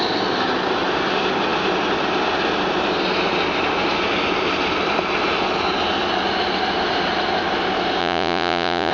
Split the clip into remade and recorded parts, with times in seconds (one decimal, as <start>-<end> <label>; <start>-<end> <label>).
0.0-8.0 recorded; 8.0-8.9 remade